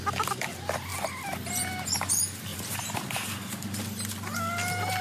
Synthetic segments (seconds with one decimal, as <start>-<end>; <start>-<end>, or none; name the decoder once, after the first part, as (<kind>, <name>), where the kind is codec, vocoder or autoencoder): 2.5-3.8 (vocoder, BigVGAN v2)